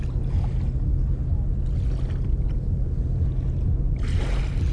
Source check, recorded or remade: recorded